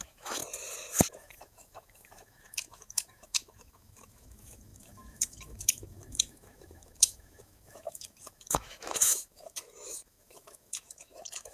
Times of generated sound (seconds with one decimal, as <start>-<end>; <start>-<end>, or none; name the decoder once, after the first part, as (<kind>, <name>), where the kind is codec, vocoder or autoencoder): 0.0-0.4 (autoencoder, DAC-VAE); 1.1-11.5